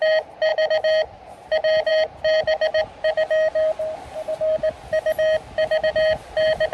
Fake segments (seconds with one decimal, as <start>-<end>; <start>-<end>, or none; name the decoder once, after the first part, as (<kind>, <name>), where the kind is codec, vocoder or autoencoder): none